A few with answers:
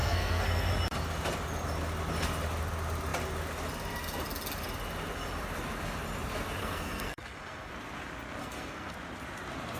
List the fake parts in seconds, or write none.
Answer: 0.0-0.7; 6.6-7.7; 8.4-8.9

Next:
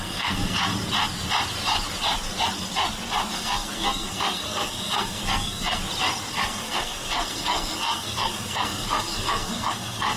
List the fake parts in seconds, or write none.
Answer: 0.0-0.7; 3.3-5.8; 6.3-10.2

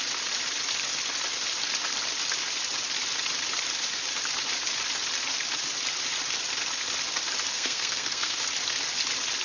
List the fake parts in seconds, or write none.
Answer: 7.5-8.4